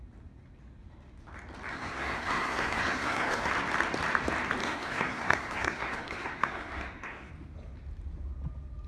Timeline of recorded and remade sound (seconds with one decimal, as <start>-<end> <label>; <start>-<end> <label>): 0.0-1.7 recorded; 1.7-3.5 remade; 3.5-4.6 recorded; 4.6-7.3 remade; 7.3-8.9 recorded